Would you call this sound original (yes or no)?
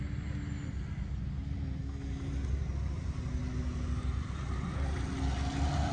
yes